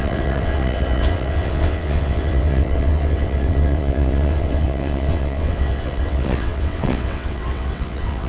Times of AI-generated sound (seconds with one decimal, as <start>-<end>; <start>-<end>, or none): 0.0-8.3